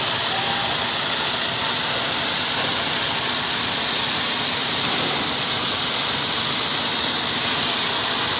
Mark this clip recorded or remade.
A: recorded